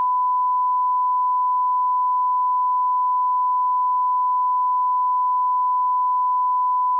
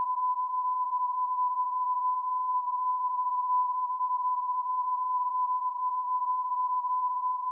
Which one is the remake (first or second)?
second